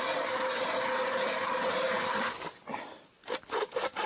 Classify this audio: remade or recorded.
recorded